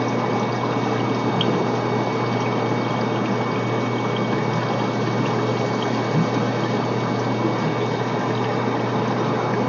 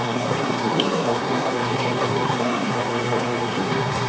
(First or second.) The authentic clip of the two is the first